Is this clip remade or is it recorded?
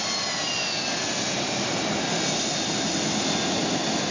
recorded